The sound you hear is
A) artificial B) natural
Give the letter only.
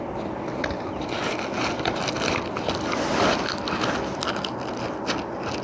B